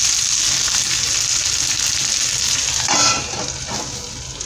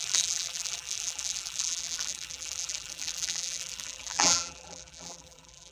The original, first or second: first